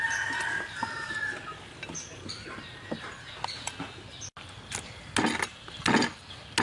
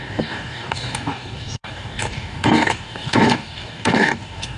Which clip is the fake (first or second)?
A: second